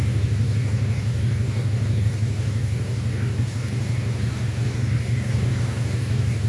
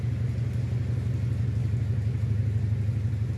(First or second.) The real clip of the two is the second